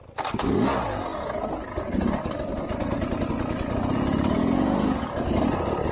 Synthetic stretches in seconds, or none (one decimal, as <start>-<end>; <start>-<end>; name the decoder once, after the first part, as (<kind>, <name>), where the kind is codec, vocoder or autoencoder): 4.4-5.0 (vocoder, Vocos)

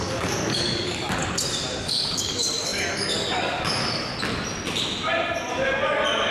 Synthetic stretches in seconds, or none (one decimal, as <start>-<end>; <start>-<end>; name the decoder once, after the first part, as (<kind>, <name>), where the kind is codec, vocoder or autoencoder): 0.0-1.2 (codec, DAC); 1.8-4.1

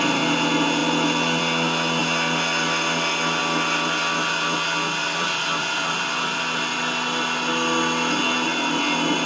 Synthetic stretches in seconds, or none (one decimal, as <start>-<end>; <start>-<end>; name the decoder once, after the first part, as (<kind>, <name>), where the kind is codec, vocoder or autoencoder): 5.0-6.4 (vocoder, BigVGAN v2)

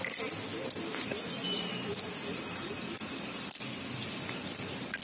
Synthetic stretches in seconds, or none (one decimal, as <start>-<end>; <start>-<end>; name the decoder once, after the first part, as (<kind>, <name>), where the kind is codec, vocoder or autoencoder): none

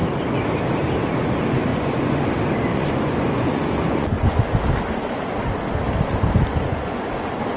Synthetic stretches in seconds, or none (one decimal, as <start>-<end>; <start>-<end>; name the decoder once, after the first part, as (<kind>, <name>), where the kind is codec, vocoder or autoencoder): 1.7-2.2 (vocoder, Vocos); 2.7-4.4; 6.5-7.1

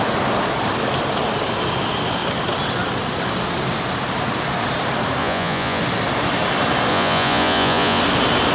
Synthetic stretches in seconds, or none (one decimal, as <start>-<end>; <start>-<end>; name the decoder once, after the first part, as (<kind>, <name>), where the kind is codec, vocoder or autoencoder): 5.2-5.8 (vocoder, Vocos); 6.9-8.0

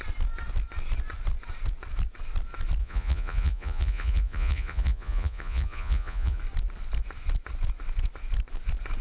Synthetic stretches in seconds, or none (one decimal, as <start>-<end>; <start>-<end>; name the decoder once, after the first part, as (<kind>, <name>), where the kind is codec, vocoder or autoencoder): 2.8-6.4 (vocoder, Vocos)